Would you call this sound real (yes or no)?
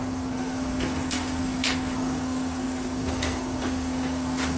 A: no